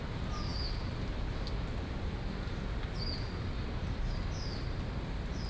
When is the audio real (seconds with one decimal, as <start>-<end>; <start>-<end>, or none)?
0.0-5.5